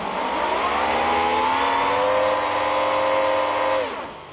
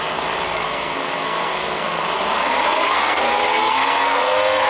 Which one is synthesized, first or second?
second